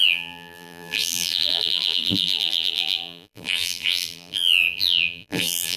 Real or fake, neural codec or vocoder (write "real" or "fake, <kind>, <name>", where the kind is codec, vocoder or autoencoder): fake, vocoder, BigVGAN v2